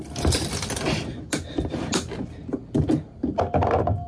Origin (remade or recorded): recorded